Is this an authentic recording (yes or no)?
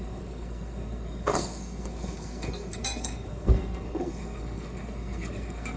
no